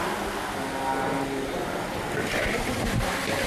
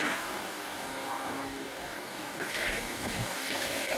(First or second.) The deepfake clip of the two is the second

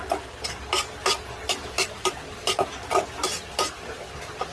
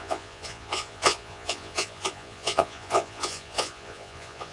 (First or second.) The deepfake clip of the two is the second